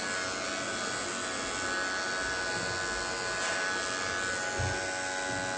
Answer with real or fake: real